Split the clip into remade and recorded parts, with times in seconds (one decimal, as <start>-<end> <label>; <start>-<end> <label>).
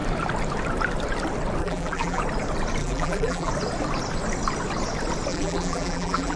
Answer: 0.0-1.6 recorded; 1.6-2.2 remade; 2.2-2.8 recorded; 2.8-3.5 remade; 3.5-5.3 recorded; 5.3-6.4 remade